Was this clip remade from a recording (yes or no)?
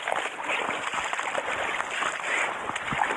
no